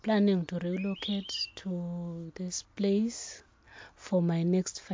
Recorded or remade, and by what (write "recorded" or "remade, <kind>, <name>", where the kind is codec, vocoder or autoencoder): recorded